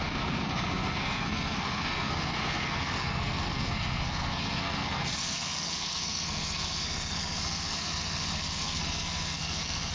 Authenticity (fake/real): fake